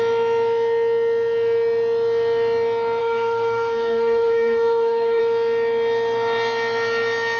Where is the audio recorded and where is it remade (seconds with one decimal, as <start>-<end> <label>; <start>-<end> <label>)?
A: 0.0-3.0 recorded; 3.0-5.2 remade; 5.2-7.4 recorded